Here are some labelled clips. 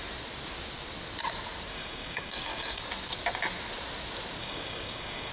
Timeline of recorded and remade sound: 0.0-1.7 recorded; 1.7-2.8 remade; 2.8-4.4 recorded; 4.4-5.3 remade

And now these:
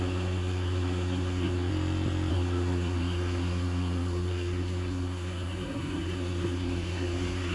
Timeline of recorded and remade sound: 0.0-1.7 remade; 1.7-2.3 recorded; 2.3-7.5 remade

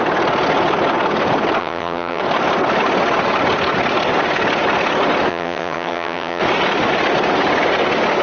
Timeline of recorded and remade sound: 0.0-1.6 recorded; 1.6-2.2 remade; 2.2-5.3 recorded; 5.3-6.4 remade; 6.4-8.2 recorded